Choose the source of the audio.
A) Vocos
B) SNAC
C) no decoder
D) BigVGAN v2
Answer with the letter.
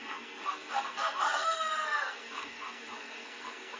B